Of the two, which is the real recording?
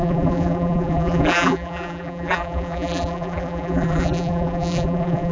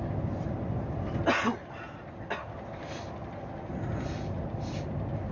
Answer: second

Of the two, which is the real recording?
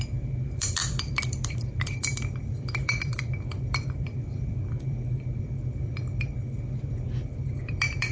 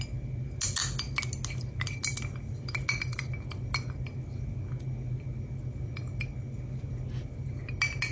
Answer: second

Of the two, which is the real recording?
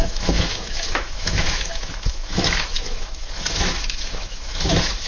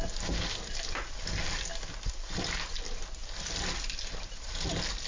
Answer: second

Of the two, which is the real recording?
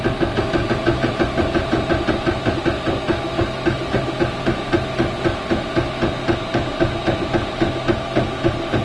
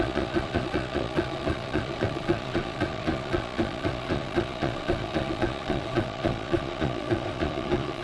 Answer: first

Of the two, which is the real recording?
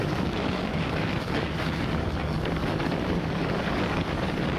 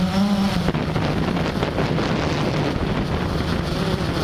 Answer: second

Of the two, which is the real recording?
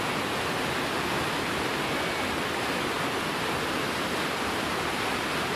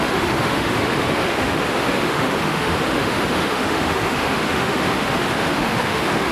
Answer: first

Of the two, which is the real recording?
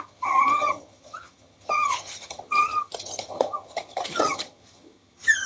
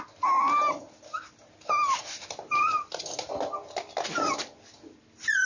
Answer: second